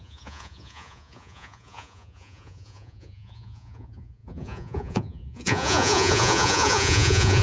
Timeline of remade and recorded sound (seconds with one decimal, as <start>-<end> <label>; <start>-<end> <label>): 0.0-7.4 remade